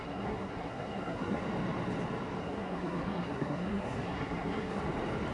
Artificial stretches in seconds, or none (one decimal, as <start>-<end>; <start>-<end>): 0.0-1.4; 2.4-4.8